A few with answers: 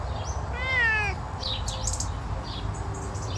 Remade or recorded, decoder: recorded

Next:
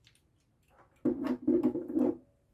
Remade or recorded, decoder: recorded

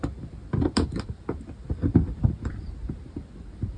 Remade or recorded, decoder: remade, vocoder, BigVGAN v2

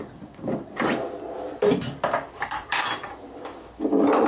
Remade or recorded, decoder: remade, vocoder, BigVGAN v2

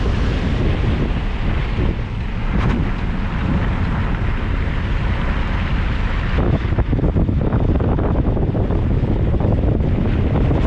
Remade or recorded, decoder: remade, vocoder, BigVGAN v2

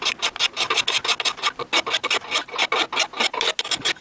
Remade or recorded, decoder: recorded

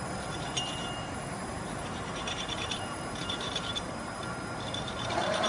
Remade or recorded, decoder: remade, vocoder, BigVGAN v2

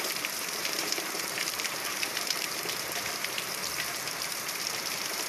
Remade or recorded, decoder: remade, vocoder, BigVGAN v2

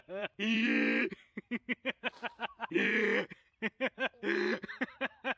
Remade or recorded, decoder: remade, vocoder, BigVGAN v2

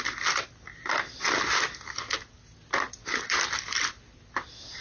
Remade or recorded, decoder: recorded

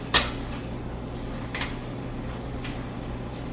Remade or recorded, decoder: recorded